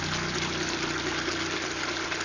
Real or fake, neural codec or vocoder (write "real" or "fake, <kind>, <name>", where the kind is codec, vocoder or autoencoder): real